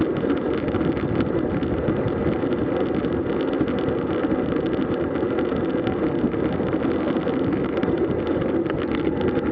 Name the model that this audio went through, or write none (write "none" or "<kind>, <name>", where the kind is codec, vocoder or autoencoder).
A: none